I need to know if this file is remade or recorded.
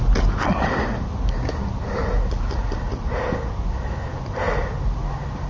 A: recorded